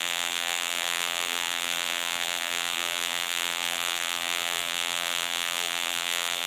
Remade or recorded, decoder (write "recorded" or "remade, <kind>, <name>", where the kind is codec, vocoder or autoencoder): remade, vocoder, BigVGAN v2